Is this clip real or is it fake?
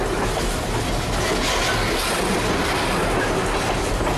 real